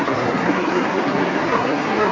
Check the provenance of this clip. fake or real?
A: fake